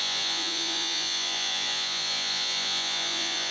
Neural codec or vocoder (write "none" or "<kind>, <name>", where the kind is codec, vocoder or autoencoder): vocoder, Vocos